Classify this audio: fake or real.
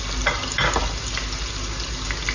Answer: real